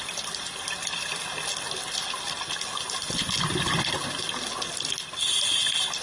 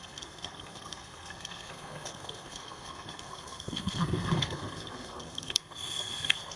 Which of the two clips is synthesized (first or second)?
second